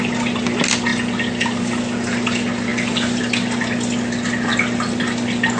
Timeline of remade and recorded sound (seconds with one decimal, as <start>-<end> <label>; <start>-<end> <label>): 0.0-5.6 recorded